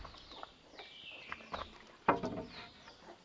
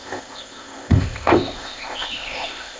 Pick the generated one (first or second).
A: second